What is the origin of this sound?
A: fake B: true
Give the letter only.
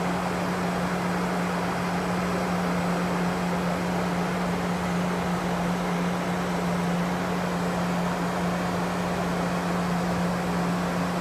B